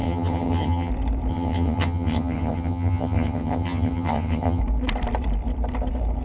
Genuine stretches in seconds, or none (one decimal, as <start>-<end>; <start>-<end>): 0.9-1.3; 4.6-6.2